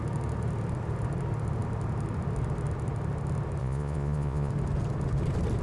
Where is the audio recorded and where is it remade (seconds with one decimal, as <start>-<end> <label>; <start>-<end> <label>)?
0.0-3.6 recorded; 3.6-4.5 remade; 4.5-5.6 recorded